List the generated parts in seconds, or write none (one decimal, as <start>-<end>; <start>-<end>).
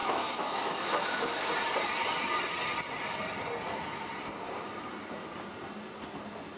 0.0-1.5